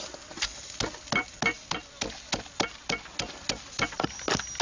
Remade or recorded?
recorded